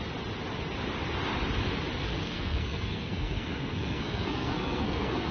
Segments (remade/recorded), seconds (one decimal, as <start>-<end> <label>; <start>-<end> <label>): 0.0-2.0 recorded; 2.0-5.3 remade